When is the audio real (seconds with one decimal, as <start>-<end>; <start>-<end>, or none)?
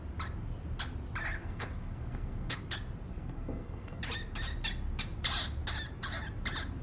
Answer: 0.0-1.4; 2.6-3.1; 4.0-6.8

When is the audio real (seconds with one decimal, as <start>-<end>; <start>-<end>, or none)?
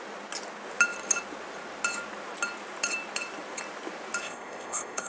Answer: 0.0-4.2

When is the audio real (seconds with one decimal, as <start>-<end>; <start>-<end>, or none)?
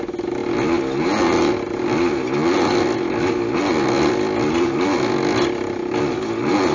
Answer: 0.0-6.7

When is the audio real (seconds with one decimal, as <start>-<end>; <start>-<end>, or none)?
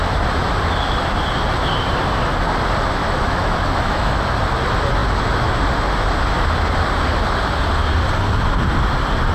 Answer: 0.0-3.0; 4.2-9.3